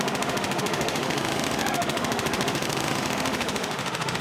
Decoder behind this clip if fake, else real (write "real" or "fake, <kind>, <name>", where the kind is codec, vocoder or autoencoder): fake, autoencoder, DAC-VAE